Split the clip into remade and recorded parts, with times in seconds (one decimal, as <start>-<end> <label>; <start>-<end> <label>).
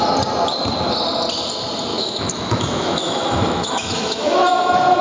0.0-1.9 recorded; 1.9-5.0 remade